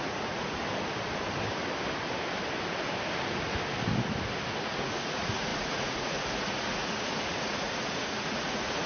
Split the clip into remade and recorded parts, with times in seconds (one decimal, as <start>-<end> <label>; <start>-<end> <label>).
0.0-0.6 remade; 0.6-4.6 recorded; 4.6-8.9 remade